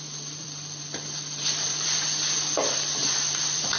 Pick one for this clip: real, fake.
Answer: fake